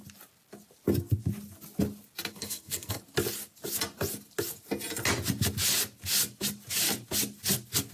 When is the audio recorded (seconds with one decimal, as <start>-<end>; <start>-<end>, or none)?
0.0-2.3; 3.0-7.9